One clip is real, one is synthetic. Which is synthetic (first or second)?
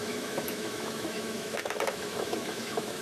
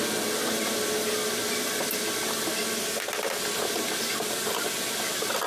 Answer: first